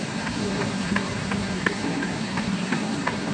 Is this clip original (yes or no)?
no